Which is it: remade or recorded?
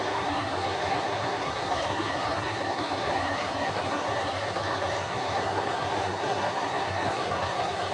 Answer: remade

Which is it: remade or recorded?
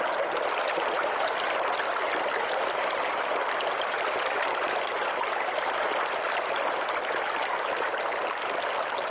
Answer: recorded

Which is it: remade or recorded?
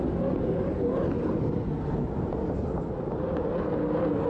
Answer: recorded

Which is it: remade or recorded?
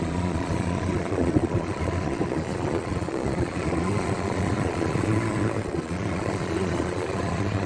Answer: remade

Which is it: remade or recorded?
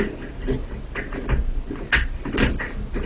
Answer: recorded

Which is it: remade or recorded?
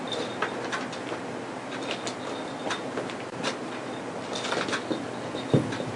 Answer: recorded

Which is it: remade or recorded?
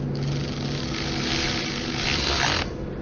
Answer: recorded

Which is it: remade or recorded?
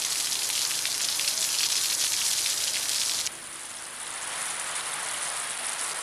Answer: recorded